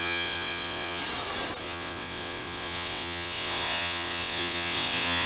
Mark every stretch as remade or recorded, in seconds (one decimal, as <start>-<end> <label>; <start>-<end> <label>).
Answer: 0.0-1.0 remade; 1.0-1.6 recorded; 1.6-5.3 remade